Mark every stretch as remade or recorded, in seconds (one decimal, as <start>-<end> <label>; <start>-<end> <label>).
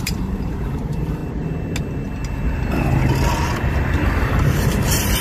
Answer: 0.0-1.2 remade; 1.2-4.2 recorded; 4.2-5.2 remade